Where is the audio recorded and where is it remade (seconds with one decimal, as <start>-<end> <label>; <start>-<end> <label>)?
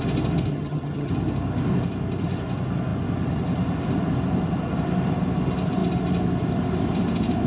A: 0.0-0.5 recorded; 0.5-1.1 remade; 1.1-7.5 recorded